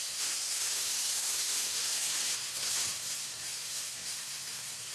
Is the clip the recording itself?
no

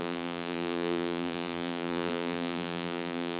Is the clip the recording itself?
no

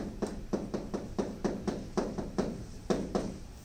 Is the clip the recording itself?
no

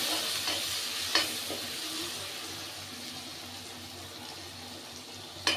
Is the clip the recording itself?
yes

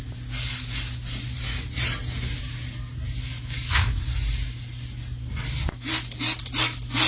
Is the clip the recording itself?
yes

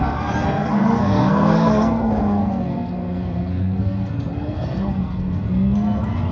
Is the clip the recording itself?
no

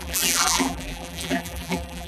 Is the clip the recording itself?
no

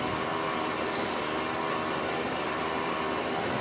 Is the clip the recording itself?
yes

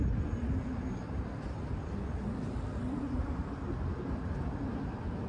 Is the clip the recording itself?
yes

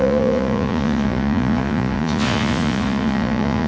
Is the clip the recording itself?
no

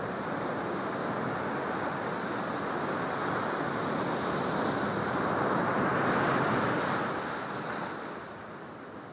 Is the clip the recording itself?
yes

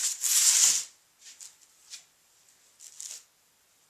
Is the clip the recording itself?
yes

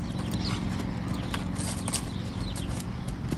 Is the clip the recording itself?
yes